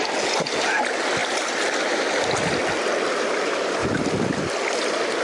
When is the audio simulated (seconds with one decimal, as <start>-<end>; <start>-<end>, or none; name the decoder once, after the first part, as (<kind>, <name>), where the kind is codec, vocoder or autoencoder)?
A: none